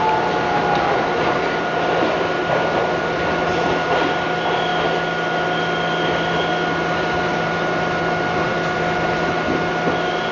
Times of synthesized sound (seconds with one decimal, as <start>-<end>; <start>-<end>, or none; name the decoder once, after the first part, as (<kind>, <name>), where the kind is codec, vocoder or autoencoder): none